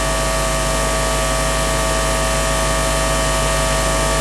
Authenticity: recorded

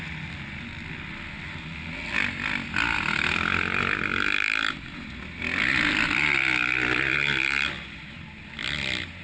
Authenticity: recorded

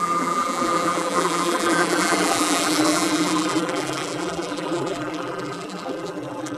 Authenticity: remade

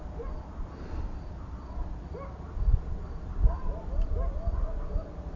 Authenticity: recorded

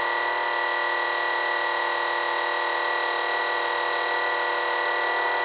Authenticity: recorded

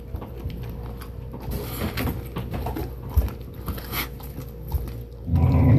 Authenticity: recorded